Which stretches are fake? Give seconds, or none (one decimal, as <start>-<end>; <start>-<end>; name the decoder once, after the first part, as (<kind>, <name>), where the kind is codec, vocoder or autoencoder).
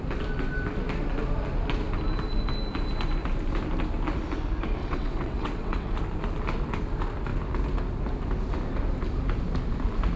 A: 4.8-5.9 (vocoder, WaveNeXt)